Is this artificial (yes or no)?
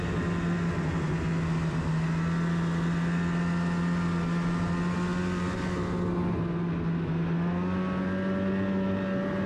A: no